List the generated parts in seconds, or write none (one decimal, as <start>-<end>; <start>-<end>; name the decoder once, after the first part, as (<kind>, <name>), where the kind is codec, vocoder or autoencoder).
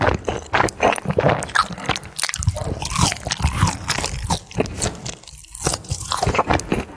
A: 5.7-6.5 (vocoder, Vocos)